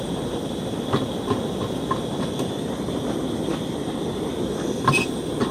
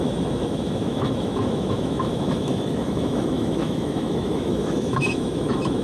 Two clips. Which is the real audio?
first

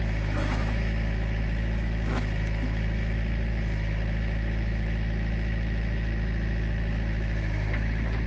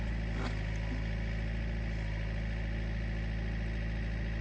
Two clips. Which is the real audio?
second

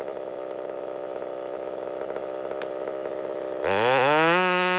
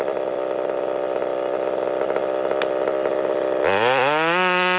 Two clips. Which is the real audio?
second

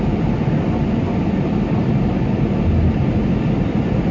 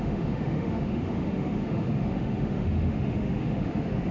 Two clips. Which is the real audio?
first